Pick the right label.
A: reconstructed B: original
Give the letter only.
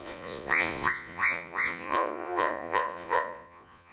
A